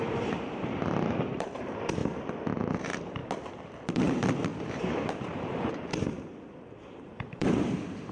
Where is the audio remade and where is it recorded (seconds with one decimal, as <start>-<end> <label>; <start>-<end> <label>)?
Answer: 0.0-2.0 remade; 2.0-2.6 recorded; 2.6-3.2 remade; 3.2-3.9 recorded; 3.9-8.1 remade